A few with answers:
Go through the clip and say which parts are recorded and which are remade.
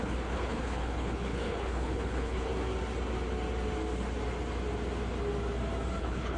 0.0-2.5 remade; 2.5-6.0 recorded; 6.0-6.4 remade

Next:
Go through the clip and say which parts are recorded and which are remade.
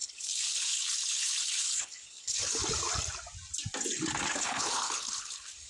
0.0-2.6 remade; 2.6-4.4 recorded; 4.4-5.7 remade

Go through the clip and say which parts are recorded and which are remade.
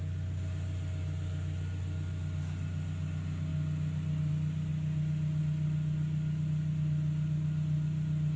0.0-8.4 recorded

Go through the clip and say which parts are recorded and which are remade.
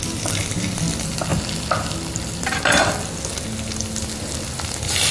0.0-5.1 recorded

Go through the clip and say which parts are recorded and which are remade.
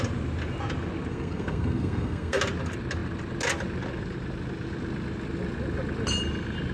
0.0-1.1 recorded; 1.1-2.4 remade; 2.4-6.7 recorded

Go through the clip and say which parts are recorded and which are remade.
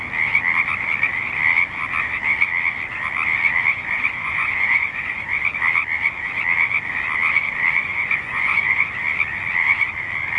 0.0-3.7 recorded; 3.7-5.5 remade; 5.5-7.8 recorded; 7.8-8.9 remade; 8.9-10.4 recorded